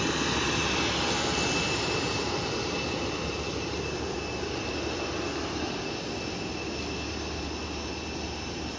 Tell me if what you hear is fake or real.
real